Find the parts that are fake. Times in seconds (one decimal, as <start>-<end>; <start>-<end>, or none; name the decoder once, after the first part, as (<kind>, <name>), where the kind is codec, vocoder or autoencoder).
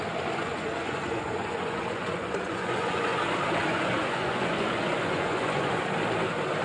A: 0.4-3.2 (vocoder, Vocos); 3.6-5.8